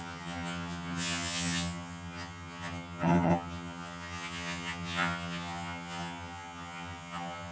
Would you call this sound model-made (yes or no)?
yes